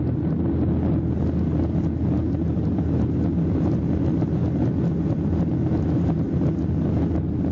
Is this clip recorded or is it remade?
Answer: recorded